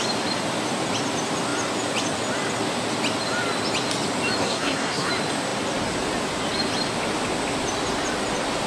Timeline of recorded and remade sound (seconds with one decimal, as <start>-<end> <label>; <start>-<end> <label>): 0.0-4.4 recorded; 4.4-5.1 remade; 5.1-8.7 recorded